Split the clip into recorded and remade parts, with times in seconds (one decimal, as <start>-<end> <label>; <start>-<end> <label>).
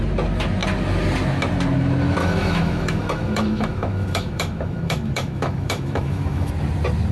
0.0-2.2 recorded; 2.2-6.5 remade; 6.5-7.1 recorded